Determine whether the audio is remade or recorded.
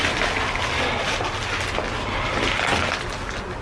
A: recorded